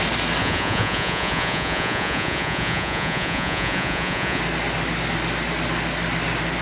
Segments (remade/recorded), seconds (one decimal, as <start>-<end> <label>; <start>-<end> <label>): 0.0-0.4 recorded; 0.4-4.4 remade; 4.4-6.6 recorded